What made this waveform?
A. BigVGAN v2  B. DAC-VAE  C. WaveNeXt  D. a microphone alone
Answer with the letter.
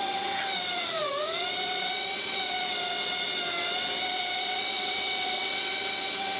C